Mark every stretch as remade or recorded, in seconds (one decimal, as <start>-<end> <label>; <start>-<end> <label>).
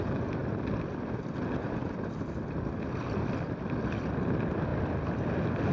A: 0.0-5.7 recorded